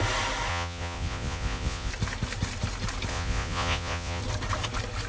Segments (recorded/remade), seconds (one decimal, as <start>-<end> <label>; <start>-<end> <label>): 0.0-0.5 recorded; 0.5-1.9 remade; 1.9-3.1 recorded; 3.1-4.2 remade; 4.2-5.1 recorded

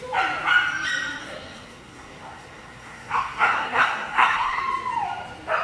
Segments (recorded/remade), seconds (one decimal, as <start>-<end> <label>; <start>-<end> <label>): 0.0-1.2 recorded; 1.2-4.6 remade; 4.6-5.6 recorded